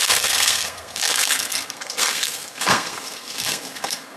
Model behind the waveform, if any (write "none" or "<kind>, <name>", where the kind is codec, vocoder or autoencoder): codec, SNAC